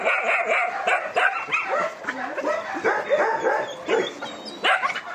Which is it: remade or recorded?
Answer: recorded